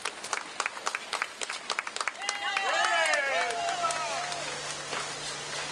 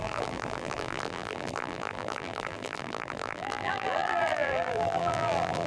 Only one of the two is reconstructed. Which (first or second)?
second